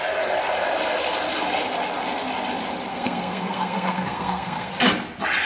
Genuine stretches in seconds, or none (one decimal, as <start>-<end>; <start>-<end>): 0.0-2.9; 4.7-5.5